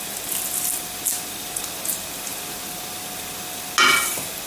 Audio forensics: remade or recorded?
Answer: recorded